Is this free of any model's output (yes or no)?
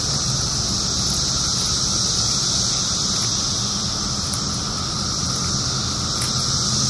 yes